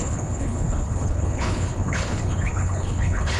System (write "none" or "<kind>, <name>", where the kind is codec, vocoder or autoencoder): codec, HILCodec